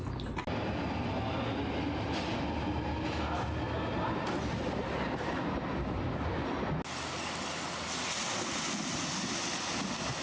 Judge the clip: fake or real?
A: real